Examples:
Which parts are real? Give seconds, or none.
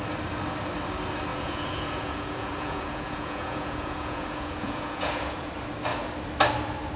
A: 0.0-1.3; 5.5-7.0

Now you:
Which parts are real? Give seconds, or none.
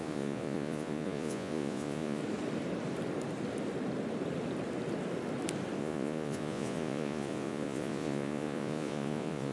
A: 2.2-5.8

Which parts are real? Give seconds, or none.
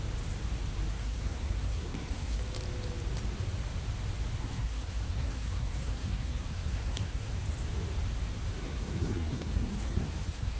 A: 0.0-0.9; 2.4-4.4; 7.3-8.6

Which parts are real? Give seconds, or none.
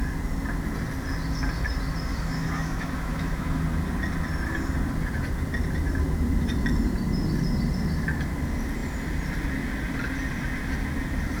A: 0.0-2.1; 3.6-11.4